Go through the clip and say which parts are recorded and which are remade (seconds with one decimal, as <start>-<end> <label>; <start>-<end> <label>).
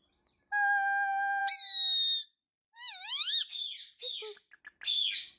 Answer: 0.0-5.4 recorded